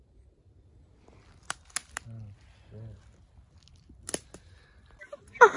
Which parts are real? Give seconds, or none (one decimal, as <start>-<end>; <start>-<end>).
0.0-5.6

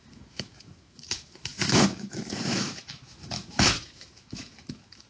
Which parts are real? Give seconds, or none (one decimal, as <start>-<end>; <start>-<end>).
none

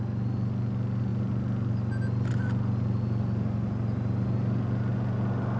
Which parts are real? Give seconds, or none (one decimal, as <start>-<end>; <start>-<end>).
0.0-5.6

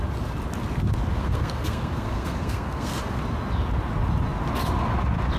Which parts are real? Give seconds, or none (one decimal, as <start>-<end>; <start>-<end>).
0.0-1.2; 3.2-5.4

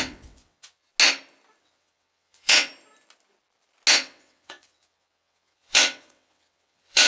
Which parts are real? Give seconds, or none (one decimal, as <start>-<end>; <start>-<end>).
0.9-1.6; 2.7-3.9

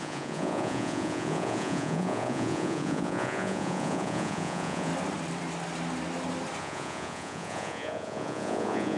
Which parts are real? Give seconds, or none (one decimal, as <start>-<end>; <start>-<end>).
4.9-6.6

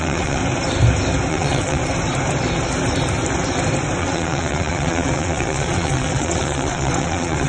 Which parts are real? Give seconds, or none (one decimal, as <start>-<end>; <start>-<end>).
0.4-1.3; 1.8-4.0

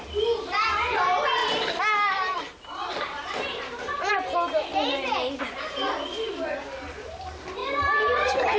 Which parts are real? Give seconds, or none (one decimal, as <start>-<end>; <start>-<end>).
0.0-1.4; 2.4-2.8; 4.1-8.6